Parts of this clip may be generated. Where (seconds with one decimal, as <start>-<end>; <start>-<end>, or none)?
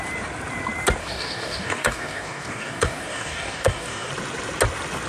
1.0-4.1